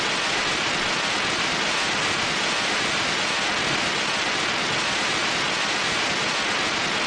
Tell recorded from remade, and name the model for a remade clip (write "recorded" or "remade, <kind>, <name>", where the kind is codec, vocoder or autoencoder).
recorded